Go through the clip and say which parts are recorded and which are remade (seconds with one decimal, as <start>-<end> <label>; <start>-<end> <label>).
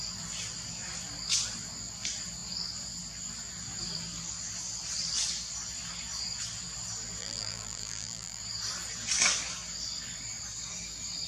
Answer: 0.0-7.2 recorded; 7.2-8.4 remade; 8.4-11.3 recorded